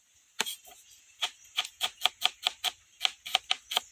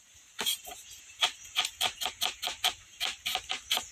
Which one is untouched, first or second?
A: first